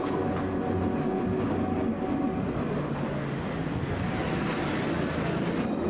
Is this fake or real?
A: real